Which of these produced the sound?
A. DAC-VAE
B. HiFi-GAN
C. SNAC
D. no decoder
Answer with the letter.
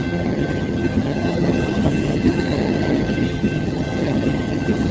B